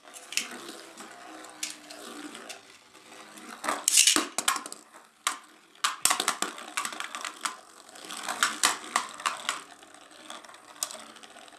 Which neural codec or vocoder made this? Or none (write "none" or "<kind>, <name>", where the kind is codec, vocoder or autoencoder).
none